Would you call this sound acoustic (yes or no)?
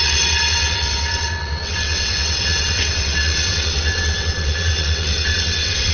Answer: no